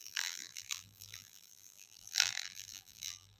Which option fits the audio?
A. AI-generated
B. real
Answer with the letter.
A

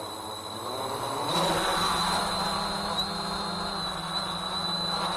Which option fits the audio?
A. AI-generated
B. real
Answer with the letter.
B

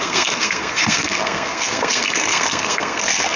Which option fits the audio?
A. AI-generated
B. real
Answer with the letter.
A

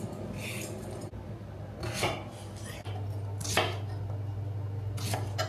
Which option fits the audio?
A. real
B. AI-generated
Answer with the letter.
A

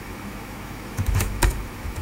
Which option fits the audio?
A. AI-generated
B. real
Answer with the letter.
A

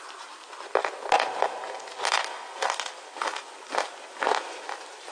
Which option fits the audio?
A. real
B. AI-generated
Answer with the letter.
A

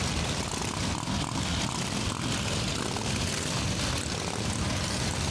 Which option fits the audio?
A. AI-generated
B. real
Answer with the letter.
B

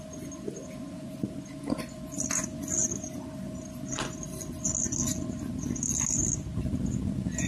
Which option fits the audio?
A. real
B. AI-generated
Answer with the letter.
A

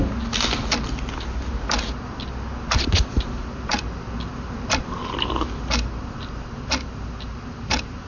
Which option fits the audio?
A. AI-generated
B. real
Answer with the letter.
B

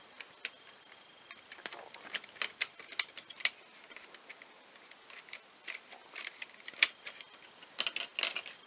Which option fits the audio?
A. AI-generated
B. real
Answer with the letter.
B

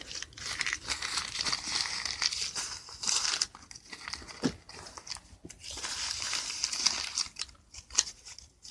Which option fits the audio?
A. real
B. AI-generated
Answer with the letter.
A